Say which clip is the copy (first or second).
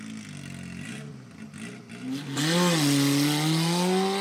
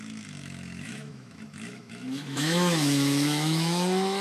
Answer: second